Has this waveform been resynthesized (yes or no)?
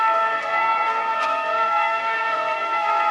yes